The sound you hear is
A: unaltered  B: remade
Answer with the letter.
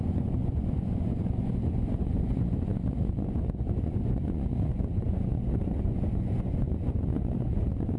B